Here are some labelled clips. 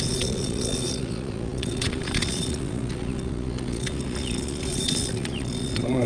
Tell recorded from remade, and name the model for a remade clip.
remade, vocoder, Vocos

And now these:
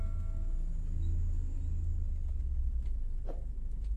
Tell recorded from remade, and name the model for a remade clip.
recorded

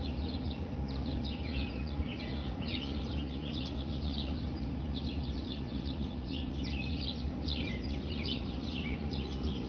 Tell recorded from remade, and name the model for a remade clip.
remade, vocoder, Vocos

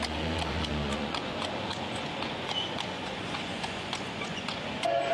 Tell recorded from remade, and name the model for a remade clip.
remade, vocoder, Vocos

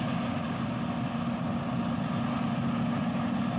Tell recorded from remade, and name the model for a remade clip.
recorded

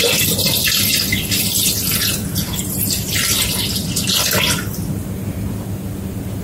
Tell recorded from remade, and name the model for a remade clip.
recorded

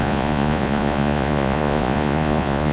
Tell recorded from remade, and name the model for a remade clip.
remade, vocoder, Vocos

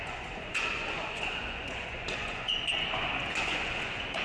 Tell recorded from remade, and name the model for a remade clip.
remade, vocoder, Vocos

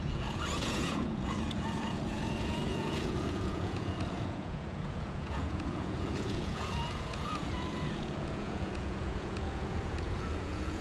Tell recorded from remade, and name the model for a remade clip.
remade, vocoder, Vocos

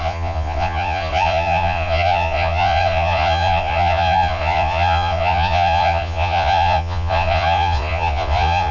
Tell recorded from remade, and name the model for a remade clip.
remade, vocoder, Vocos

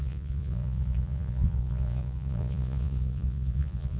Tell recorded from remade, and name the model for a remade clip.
remade, vocoder, Vocos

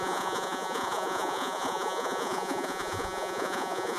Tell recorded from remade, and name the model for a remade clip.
remade, vocoder, Vocos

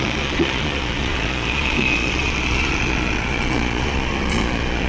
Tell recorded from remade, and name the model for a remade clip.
remade, vocoder, Vocos